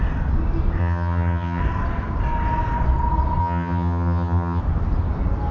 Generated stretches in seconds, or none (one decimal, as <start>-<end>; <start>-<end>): 0.8-1.6; 3.4-4.6

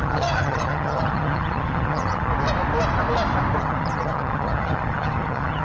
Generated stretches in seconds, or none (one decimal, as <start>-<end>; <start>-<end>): 0.0-2.3; 3.6-5.6

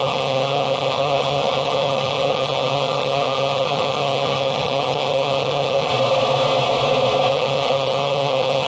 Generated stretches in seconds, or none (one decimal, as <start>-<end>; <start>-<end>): 0.0-5.9; 7.3-8.7

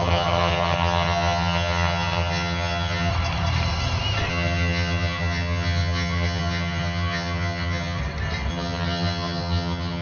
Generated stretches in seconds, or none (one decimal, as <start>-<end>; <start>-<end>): 0.0-3.1; 4.3-8.0; 8.5-10.0

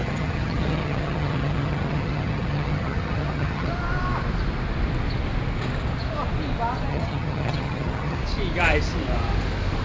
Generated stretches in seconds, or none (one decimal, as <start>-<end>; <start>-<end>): 0.0-3.7; 6.9-8.2

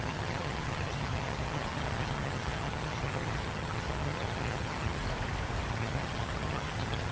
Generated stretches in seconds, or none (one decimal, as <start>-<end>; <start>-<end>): 0.0-5.0; 5.7-7.1

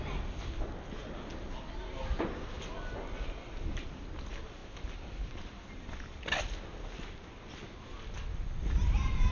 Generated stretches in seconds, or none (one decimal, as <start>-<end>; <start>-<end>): none